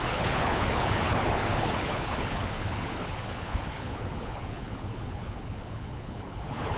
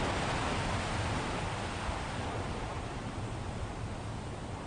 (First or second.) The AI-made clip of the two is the first